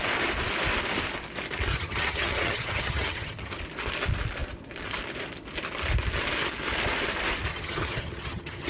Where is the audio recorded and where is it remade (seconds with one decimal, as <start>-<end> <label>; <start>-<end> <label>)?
0.0-1.7 recorded; 1.7-3.6 remade; 3.6-7.5 recorded; 7.5-8.7 remade